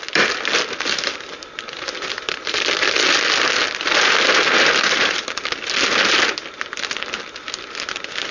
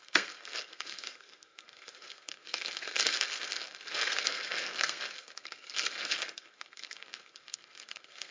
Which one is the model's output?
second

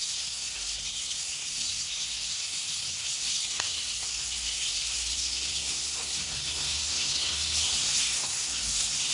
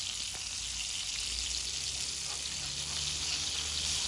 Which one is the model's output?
first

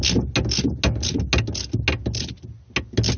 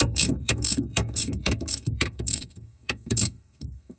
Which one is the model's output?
second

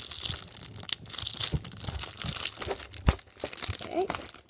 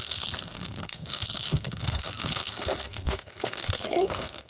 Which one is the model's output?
second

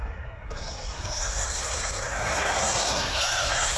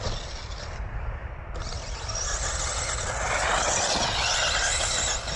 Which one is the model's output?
first